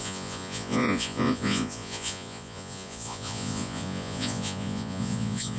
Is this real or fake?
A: fake